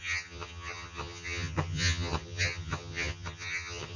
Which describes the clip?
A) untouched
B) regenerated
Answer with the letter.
B